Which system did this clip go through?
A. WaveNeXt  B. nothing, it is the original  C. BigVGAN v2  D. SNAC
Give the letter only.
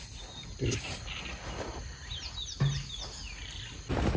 B